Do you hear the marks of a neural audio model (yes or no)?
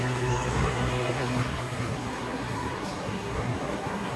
yes